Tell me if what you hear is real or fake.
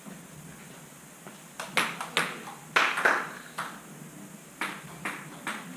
real